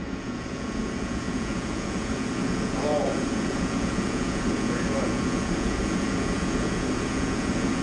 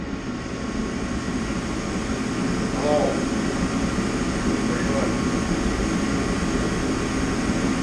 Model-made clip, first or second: first